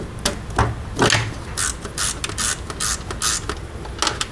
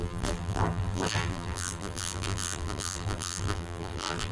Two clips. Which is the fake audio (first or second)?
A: second